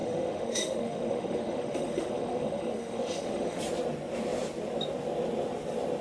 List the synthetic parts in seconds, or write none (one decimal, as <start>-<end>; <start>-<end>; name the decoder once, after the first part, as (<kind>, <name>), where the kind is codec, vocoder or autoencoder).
0.0-3.6 (autoencoder, DAC-VAE)

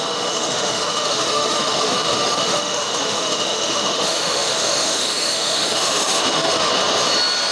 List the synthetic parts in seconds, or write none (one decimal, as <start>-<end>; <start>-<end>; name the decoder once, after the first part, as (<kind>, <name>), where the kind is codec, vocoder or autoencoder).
0.0-6.7 (autoencoder, DAC-VAE)

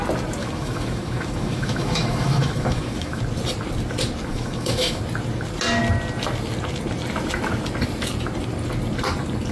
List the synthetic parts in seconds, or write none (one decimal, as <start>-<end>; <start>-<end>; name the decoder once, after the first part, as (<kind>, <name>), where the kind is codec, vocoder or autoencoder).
0.4-3.2 (autoencoder, DAC-VAE); 4.3-5.0